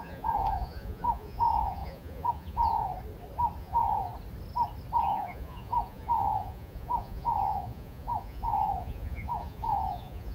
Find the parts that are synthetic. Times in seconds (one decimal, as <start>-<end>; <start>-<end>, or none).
0.0-2.9; 3.6-4.1; 5.0-10.3